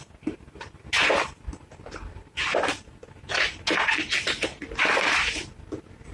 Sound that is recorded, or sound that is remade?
recorded